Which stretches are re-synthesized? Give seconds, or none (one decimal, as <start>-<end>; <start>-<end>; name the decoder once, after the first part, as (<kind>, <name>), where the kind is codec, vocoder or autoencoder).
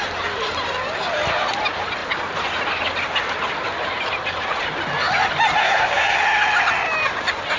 5.6-6.2 (codec, SNAC)